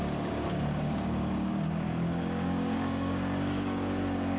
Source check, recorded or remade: remade